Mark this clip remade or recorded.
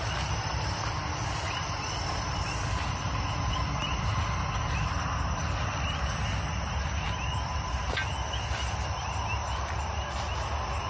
recorded